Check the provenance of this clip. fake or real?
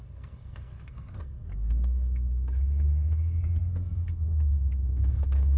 fake